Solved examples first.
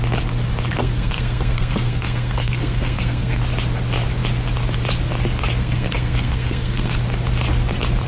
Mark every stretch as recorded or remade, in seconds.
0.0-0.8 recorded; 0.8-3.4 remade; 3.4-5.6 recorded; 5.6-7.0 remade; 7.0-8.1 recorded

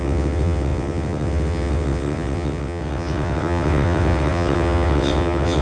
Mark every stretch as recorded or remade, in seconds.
0.0-5.6 remade